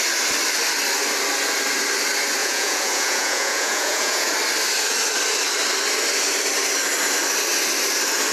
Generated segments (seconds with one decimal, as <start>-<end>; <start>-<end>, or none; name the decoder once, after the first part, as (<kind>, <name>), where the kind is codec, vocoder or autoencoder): 2.4-4.3 (vocoder, Vocos)